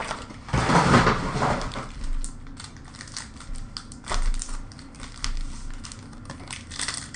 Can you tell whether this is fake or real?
real